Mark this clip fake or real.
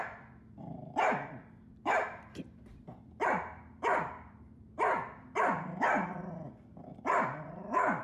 fake